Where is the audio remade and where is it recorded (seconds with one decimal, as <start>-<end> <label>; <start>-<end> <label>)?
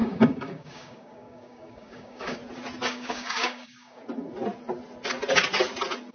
0.0-2.4 remade; 2.4-2.9 recorded; 2.9-4.0 remade; 4.0-6.1 recorded